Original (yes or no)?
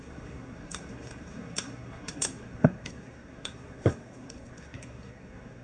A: no